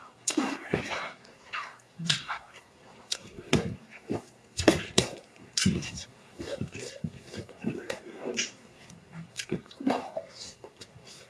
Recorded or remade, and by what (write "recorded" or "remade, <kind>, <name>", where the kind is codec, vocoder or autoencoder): remade, codec, SNAC